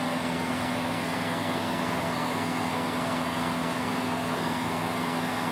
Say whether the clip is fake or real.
fake